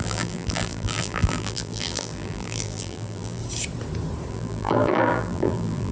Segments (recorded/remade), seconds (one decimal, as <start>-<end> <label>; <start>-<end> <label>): 0.0-3.4 remade; 3.4-4.3 recorded; 4.3-5.9 remade